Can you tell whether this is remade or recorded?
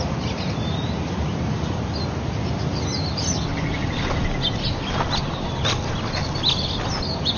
recorded